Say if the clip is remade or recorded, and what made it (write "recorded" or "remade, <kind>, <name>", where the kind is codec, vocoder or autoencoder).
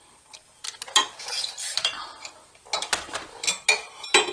recorded